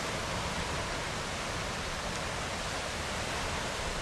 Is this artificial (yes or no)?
yes